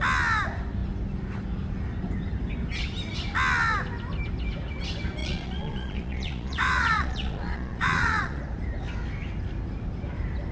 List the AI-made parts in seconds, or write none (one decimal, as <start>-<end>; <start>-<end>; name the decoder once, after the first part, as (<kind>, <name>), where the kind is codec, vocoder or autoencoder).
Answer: 5.2-8.4 (vocoder, Vocos)